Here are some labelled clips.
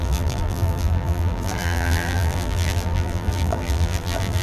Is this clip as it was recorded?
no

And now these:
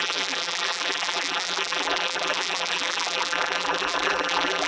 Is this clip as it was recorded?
no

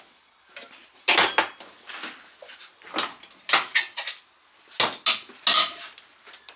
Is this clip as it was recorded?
yes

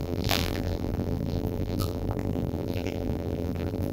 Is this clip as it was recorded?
no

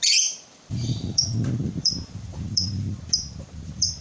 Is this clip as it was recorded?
no